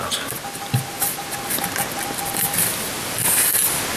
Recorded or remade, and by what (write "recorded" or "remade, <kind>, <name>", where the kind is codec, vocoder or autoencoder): recorded